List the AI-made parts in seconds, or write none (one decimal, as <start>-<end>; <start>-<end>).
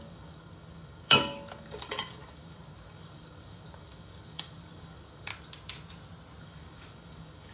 0.0-5.3; 6.4-7.5